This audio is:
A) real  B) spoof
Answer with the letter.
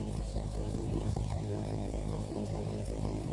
B